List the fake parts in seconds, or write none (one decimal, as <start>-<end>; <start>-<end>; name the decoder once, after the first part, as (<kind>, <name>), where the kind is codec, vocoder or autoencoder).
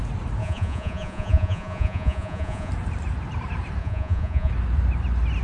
0.4-2.7 (vocoder, Vocos); 3.8-4.5